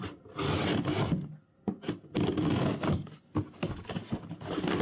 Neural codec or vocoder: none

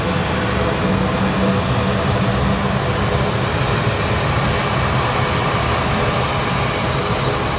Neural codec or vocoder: none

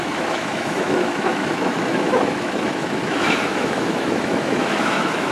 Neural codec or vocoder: autoencoder, DAC-VAE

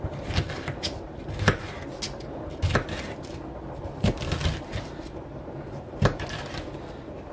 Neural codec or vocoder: none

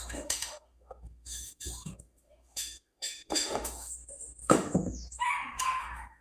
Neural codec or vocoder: autoencoder, DAC-VAE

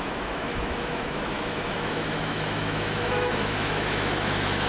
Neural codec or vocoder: autoencoder, DAC-VAE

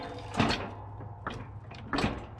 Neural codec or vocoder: none